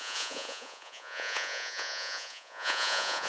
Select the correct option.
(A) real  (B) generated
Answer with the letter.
B